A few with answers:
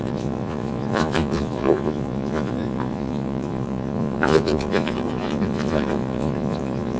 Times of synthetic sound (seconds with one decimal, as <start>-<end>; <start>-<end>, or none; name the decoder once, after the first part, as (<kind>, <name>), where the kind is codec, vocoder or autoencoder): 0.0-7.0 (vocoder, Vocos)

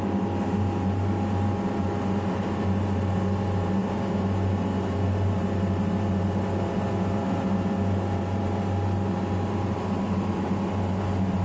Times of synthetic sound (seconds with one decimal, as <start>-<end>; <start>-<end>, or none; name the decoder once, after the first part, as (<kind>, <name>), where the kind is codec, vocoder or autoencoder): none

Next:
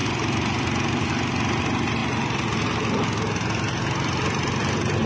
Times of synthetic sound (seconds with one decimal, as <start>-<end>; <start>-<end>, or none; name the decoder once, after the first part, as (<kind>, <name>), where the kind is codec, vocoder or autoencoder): none

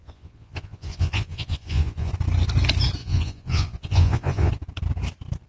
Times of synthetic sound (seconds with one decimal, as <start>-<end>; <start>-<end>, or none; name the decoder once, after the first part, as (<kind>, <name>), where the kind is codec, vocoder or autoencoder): 0.0-2.1 (vocoder, Vocos); 3.0-4.5